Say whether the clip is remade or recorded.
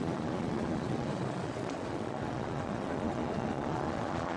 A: remade